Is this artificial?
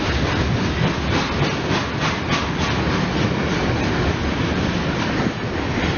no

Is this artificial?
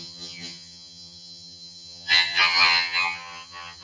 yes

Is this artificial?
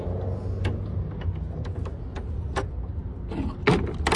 no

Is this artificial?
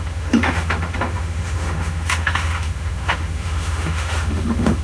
yes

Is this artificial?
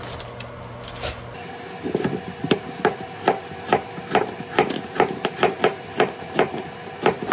no